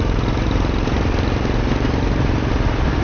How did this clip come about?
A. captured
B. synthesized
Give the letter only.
A